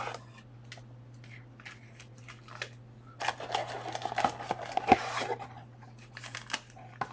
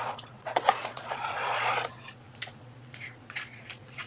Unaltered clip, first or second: first